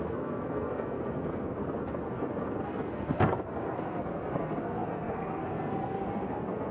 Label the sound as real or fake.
fake